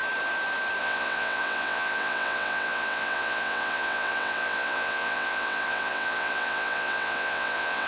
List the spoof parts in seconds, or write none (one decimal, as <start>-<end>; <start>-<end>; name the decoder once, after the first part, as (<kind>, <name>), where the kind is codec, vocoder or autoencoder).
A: 0.8-7.9 (vocoder, WaveNeXt)